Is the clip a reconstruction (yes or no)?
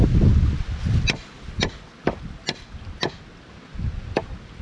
no